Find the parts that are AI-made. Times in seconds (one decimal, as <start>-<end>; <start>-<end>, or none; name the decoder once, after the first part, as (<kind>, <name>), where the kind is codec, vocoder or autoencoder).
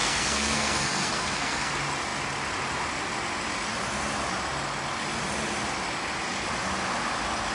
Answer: 0.0-1.7 (codec, SNAC)